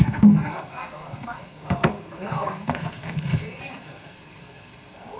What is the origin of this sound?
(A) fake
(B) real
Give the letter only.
A